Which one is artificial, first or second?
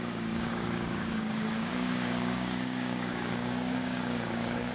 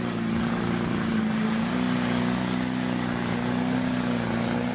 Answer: first